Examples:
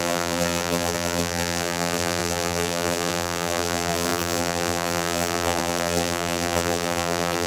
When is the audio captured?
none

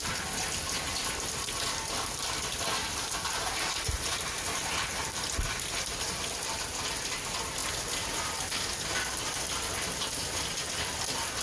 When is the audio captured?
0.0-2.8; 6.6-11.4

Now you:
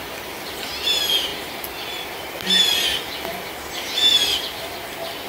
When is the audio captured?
0.0-5.3

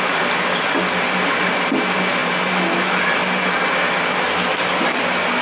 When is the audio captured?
0.0-5.4

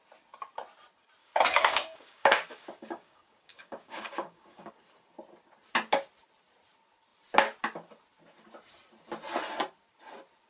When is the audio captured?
0.0-1.2; 4.7-10.5